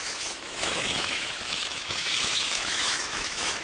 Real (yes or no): no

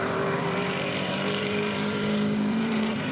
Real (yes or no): no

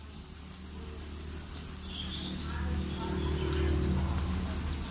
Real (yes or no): yes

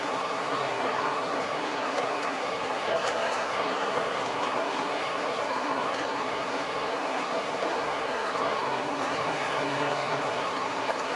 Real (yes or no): no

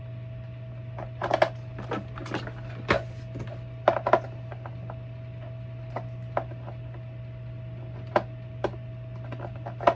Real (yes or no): yes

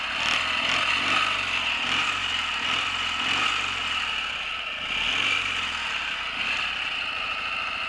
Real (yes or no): yes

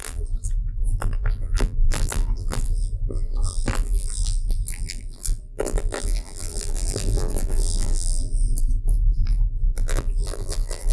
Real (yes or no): no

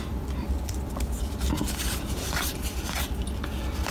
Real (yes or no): yes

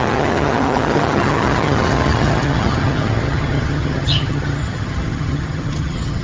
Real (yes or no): no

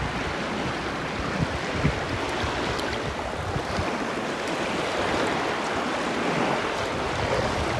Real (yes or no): yes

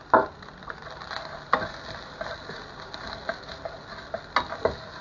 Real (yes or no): yes